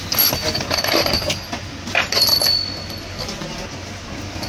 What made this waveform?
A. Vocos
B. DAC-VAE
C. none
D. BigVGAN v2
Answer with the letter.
C